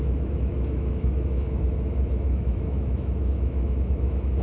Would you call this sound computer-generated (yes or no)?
yes